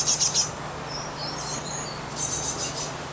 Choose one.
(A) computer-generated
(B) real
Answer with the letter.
B